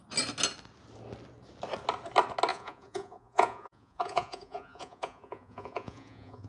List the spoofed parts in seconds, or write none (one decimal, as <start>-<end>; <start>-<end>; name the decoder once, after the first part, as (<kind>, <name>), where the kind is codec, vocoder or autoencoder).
2.5-6.5 (vocoder, Vocos)